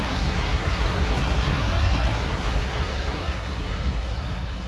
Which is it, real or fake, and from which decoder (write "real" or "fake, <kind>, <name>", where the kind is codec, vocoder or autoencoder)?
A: fake, codec, SNAC